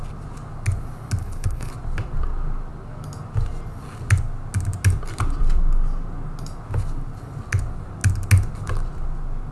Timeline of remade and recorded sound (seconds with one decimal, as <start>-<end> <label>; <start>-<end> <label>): 0.0-1.2 recorded; 1.2-1.7 remade; 1.7-9.5 recorded